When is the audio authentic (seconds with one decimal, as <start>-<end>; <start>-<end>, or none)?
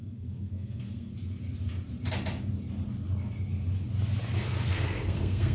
1.1-4.4